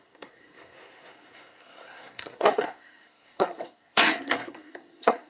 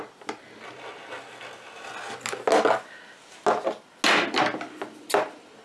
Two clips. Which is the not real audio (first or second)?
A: first